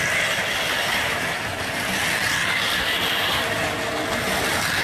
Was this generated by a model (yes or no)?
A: no